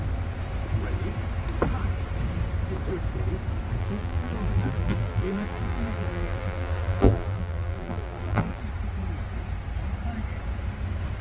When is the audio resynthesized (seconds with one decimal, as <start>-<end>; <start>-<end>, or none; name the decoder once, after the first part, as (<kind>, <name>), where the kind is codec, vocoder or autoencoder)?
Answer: 3.8-8.6 (vocoder, BigVGAN v2)